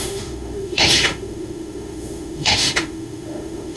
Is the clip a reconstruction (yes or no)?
yes